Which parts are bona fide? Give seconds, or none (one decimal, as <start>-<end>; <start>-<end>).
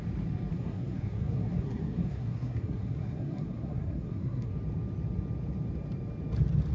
0.0-0.5; 4.5-6.7